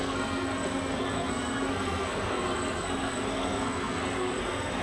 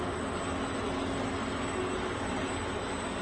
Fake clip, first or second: first